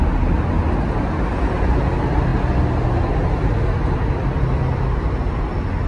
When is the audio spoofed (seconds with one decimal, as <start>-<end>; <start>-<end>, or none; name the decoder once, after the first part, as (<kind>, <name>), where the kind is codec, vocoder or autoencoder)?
none